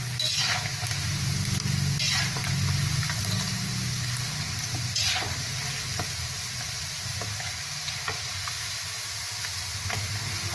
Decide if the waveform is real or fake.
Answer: real